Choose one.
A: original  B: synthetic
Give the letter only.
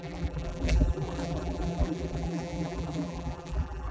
B